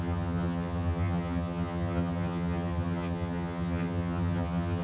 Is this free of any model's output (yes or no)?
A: no